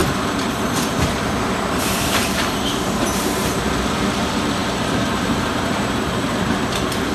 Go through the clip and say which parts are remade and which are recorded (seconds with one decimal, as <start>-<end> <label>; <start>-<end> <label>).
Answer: 0.0-7.1 remade